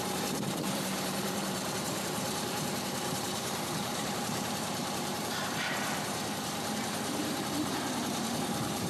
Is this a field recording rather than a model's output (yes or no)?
no